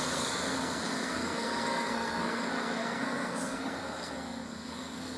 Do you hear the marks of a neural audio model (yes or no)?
yes